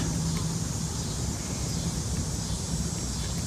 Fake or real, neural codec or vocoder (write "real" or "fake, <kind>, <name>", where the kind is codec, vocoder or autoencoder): real